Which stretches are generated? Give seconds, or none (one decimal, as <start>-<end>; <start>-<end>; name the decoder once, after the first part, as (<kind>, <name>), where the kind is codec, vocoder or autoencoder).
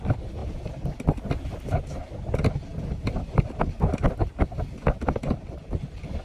none